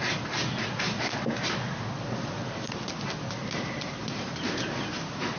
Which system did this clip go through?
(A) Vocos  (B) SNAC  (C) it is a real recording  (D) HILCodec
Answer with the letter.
C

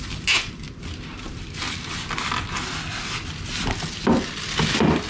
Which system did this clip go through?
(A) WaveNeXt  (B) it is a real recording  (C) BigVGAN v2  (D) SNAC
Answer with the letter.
B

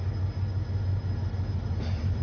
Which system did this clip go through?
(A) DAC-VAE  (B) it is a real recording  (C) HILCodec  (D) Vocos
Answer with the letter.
B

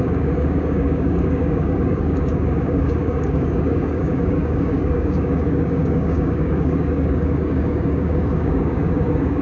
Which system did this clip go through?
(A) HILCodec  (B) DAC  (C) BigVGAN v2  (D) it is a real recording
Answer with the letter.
B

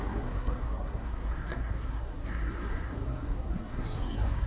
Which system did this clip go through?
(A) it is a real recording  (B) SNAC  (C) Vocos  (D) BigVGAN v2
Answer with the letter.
B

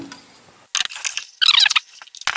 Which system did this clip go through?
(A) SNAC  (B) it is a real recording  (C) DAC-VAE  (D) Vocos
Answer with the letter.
B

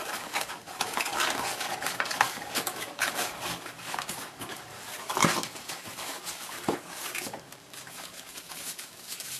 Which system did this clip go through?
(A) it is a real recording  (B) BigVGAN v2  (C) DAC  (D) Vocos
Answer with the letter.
C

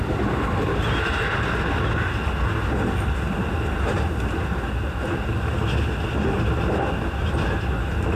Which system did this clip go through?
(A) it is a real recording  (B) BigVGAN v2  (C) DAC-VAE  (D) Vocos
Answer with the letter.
A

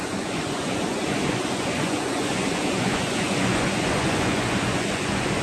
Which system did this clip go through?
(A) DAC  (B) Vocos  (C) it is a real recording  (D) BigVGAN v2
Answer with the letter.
B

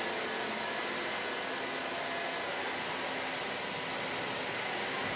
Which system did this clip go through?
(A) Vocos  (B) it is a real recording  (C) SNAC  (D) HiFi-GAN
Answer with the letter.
B